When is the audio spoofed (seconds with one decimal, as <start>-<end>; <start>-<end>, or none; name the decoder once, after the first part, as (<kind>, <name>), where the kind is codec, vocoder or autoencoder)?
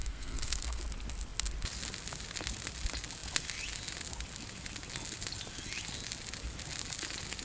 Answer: 0.0-0.8 (codec, SNAC)